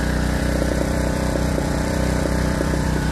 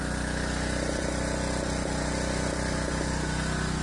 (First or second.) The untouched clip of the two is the second